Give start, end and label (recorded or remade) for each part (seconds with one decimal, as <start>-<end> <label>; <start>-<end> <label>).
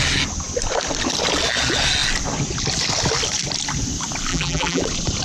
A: 0.0-4.3 recorded; 4.3-4.8 remade; 4.8-5.2 recorded